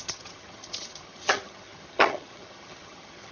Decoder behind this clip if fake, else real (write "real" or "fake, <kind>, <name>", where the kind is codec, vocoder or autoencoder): fake, vocoder, HiFi-GAN